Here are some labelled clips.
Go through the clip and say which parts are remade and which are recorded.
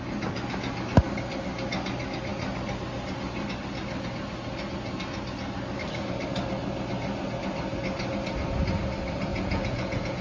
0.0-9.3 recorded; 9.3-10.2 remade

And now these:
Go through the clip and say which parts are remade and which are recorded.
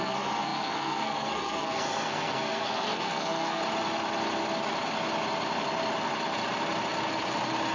0.0-3.6 remade; 3.6-7.7 recorded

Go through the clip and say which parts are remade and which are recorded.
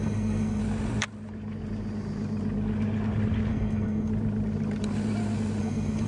0.0-0.6 remade; 0.6-3.5 recorded; 3.5-4.1 remade; 4.1-5.6 recorded; 5.6-6.1 remade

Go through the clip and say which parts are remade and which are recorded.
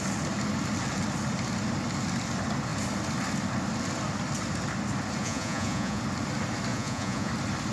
0.0-5.2 recorded; 5.2-6.0 remade; 6.0-6.7 recorded; 6.7-7.3 remade; 7.3-7.7 recorded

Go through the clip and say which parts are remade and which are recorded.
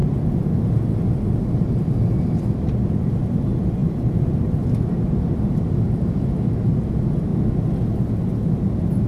0.0-9.1 recorded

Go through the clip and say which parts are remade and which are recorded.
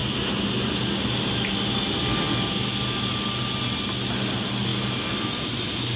0.0-6.0 recorded